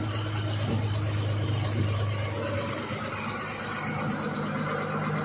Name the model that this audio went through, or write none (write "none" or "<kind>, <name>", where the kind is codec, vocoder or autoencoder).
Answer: none